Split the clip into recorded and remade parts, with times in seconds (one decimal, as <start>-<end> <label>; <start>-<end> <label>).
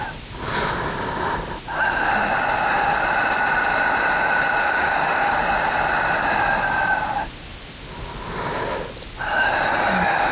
0.0-4.6 recorded; 4.6-5.3 remade; 5.3-10.3 recorded